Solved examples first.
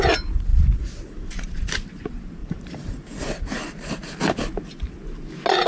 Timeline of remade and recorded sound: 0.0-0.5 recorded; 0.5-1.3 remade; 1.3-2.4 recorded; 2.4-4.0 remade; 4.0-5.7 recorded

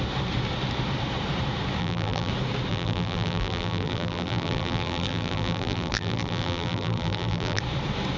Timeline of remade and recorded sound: 0.0-1.8 recorded; 1.8-2.3 remade; 2.3-2.7 recorded; 2.7-7.6 remade; 7.6-8.2 recorded

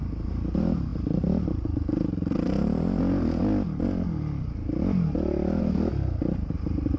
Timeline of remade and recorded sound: 0.0-3.4 remade; 3.4-5.6 recorded; 5.6-7.0 remade

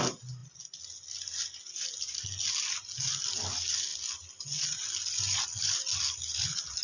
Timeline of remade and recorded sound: 0.0-6.8 recorded

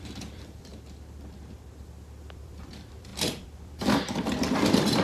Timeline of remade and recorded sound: 0.0-0.7 remade; 0.7-2.2 recorded; 2.2-5.0 remade

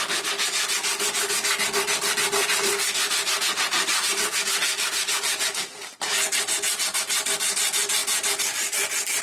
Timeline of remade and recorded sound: 0.0-2.4 recorded; 2.4-6.4 remade; 6.4-9.2 recorded

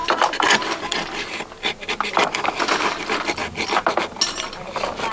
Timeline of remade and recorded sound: 0.0-5.1 recorded

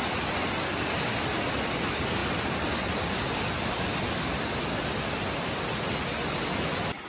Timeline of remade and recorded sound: 0.0-1.3 remade; 1.3-7.1 recorded